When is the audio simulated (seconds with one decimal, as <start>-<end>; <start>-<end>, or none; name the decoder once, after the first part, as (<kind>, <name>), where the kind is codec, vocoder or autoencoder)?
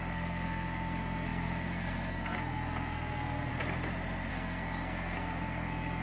0.0-3.5 (codec, SNAC); 4.3-6.0